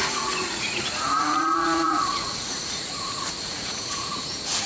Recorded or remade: remade